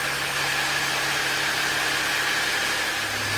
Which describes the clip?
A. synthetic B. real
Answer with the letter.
B